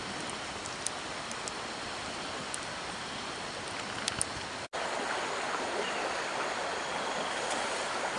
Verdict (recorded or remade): recorded